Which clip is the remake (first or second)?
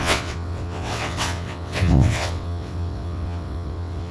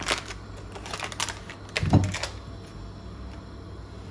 first